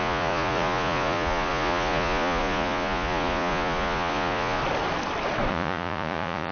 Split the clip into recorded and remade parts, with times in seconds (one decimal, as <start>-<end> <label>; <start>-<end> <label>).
0.0-4.6 remade; 4.6-5.5 recorded; 5.5-6.5 remade